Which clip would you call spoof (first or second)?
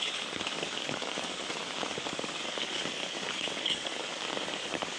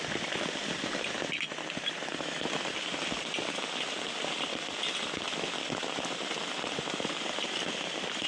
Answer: first